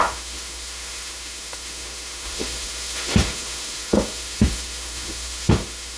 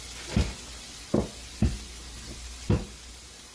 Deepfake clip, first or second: first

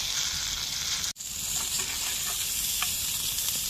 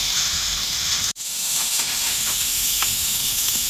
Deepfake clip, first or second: second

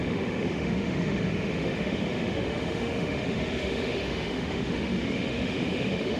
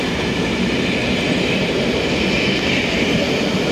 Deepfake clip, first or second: first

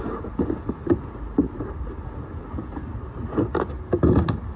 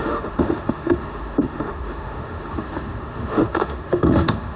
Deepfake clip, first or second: second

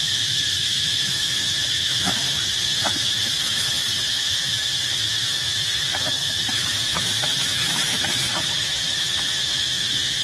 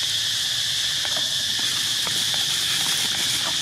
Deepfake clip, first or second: first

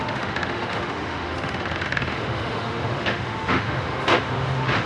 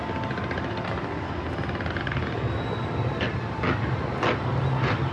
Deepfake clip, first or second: first